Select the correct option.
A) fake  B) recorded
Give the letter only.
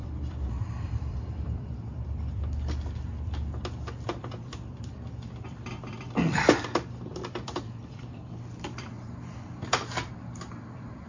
A